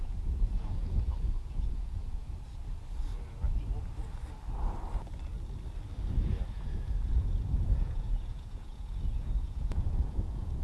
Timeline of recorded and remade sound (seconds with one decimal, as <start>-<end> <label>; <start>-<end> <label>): 0.0-2.2 remade; 2.2-6.5 recorded; 6.5-10.6 remade